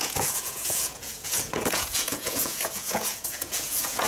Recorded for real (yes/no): no